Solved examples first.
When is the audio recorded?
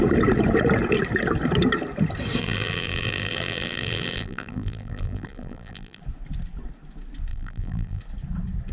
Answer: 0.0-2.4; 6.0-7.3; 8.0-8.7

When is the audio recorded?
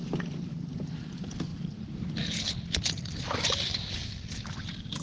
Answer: 0.0-5.0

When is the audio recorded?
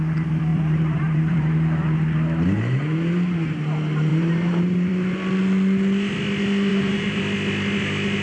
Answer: 0.0-0.5; 1.4-4.1; 4.9-6.7; 7.2-8.2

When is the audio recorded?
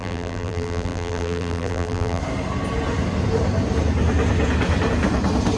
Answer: 2.2-5.6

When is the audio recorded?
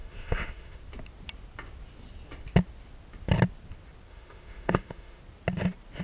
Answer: 0.8-4.1; 5.2-6.0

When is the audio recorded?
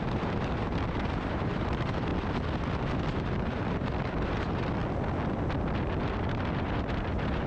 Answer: 2.1-3.0; 4.8-6.0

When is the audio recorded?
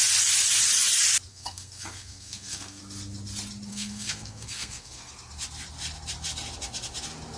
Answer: 0.0-1.3; 2.8-3.7; 5.1-7.4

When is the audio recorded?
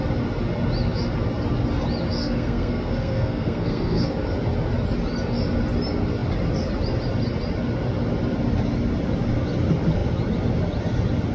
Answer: 0.0-2.2; 4.1-11.3